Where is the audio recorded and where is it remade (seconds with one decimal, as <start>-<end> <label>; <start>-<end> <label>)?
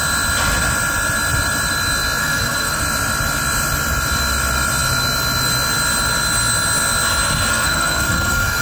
0.0-2.2 recorded; 2.2-2.8 remade; 2.8-7.5 recorded; 7.5-8.6 remade